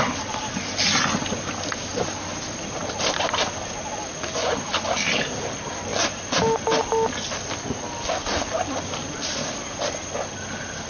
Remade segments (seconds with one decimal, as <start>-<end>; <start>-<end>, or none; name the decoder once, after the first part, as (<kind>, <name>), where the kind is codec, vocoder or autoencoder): none